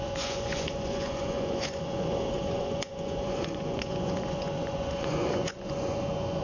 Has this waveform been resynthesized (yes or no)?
yes